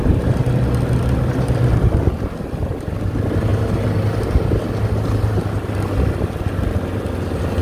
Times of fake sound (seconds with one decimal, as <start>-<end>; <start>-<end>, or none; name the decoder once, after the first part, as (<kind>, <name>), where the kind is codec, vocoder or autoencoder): none